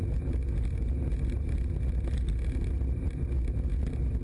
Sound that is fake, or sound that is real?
real